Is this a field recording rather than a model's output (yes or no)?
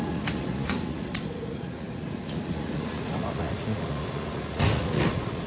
no